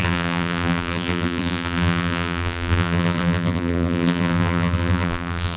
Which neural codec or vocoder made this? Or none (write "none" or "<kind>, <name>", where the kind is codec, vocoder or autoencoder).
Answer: vocoder, BigVGAN v2